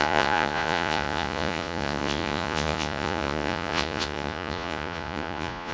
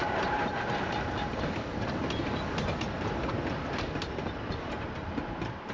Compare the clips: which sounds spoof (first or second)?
first